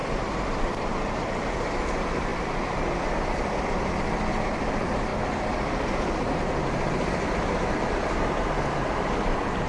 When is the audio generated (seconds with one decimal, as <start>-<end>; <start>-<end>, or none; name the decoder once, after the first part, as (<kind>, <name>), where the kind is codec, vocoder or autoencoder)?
1.5-2.3 (vocoder, BigVGAN v2); 3.0-5.1; 6.6-9.7